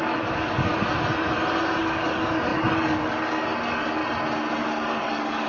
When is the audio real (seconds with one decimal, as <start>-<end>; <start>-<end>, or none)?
0.7-1.8; 4.0-4.6